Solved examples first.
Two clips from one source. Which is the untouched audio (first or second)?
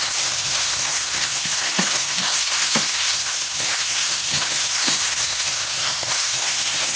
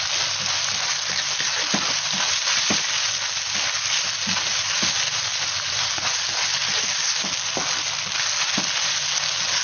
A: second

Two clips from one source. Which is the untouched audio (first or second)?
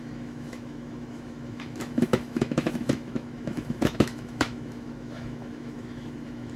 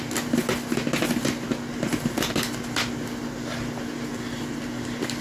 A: second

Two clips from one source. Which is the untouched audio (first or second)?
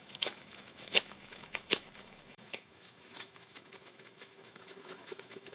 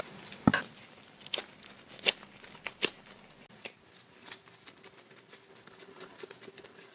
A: second